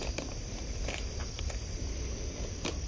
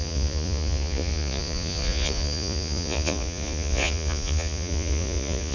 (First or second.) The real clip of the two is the first